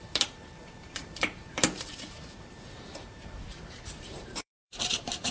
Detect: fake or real fake